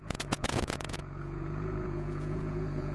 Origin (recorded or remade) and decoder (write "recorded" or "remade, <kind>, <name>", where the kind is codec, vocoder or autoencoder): remade, vocoder, Vocos